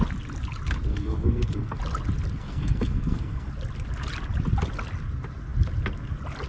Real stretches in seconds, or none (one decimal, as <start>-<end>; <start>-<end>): 0.0-0.9; 1.8-2.4; 3.5-6.5